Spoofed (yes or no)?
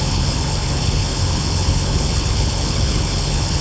yes